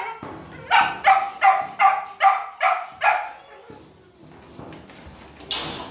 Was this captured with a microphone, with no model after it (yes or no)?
yes